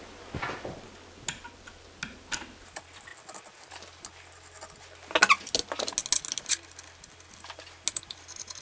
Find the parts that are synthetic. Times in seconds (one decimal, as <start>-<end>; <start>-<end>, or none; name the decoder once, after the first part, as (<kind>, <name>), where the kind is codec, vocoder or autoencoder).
3.1-3.7 (vocoder, BigVGAN v2)